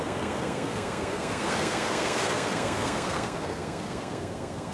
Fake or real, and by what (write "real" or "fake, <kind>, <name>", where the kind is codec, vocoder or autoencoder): fake, codec, SNAC